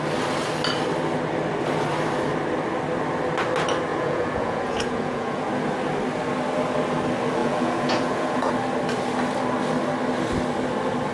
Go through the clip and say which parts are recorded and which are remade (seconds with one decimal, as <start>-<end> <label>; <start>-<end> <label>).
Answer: 0.0-3.9 recorded; 3.9-5.5 remade; 5.5-7.4 recorded; 7.4-8.5 remade; 8.5-11.1 recorded